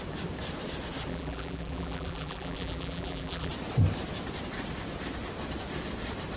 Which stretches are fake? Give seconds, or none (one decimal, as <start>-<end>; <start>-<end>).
1.1-3.5